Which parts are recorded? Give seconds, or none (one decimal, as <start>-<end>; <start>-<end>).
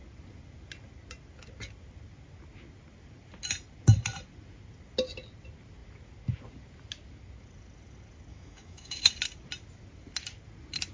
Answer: 0.0-8.3; 9.1-10.9